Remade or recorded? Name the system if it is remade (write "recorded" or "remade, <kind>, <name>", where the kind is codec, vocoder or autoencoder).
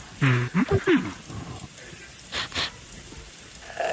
recorded